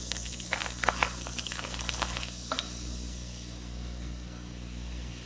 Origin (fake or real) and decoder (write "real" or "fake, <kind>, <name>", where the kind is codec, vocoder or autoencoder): fake, codec, SNAC